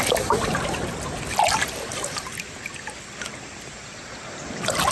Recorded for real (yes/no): yes